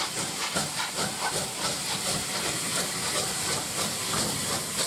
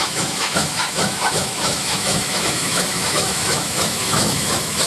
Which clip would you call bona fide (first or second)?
first